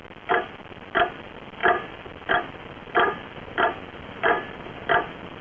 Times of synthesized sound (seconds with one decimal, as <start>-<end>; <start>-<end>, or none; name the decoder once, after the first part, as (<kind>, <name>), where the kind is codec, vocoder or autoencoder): none